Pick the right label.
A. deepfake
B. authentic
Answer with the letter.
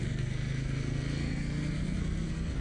A